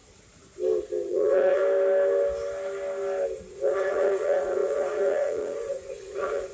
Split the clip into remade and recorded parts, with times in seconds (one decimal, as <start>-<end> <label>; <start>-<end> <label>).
0.0-1.1 recorded; 1.1-1.6 remade; 1.6-3.5 recorded; 3.5-6.5 remade

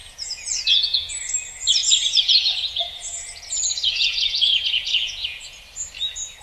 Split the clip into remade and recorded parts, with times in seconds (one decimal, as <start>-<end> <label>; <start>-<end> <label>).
0.0-1.1 remade; 1.1-1.8 recorded; 1.8-5.6 remade; 5.6-6.4 recorded

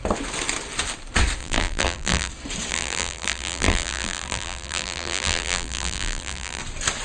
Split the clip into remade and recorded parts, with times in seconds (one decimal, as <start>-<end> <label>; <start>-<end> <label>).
0.0-1.4 recorded; 1.4-2.3 remade; 2.3-2.7 recorded; 2.7-6.6 remade; 6.6-7.0 recorded